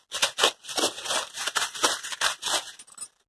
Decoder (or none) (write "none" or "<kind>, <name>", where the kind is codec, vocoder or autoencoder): none